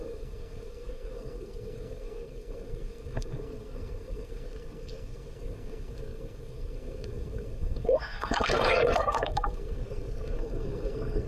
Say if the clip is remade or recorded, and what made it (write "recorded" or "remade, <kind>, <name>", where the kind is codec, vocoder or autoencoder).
remade, codec, SNAC